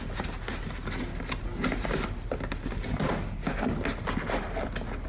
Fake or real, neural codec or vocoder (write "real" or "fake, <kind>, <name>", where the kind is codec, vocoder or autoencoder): real